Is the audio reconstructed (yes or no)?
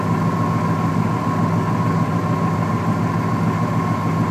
no